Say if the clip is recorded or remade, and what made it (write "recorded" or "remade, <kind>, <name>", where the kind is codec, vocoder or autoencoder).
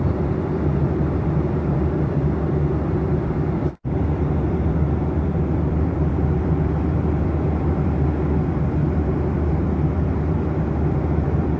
remade, vocoder, BigVGAN v2